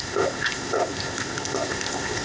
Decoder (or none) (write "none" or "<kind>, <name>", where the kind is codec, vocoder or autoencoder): codec, ZipCodec